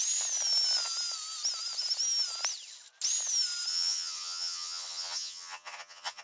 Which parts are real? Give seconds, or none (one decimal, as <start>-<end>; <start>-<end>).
0.0-3.7